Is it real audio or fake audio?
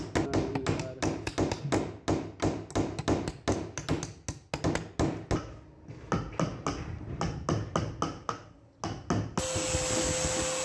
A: real